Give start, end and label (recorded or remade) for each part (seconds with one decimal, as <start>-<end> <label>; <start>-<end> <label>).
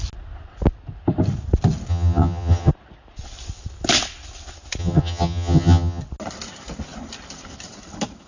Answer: 0.0-1.9 recorded; 1.9-2.7 remade; 2.7-4.8 recorded; 4.8-6.0 remade; 6.0-8.3 recorded